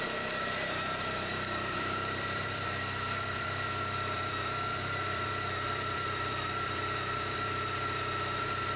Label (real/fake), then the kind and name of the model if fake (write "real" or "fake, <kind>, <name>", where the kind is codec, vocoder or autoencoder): fake, vocoder, BigVGAN v2